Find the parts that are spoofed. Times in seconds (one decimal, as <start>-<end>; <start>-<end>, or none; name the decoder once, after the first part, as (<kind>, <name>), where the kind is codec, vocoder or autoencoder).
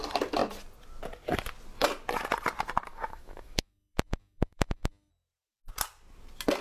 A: 2.9-5.1 (autoencoder, DAC-VAE)